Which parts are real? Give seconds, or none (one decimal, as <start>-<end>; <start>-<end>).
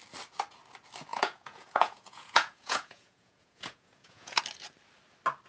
0.0-1.1; 4.4-5.5